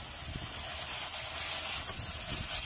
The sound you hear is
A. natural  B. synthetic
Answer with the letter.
A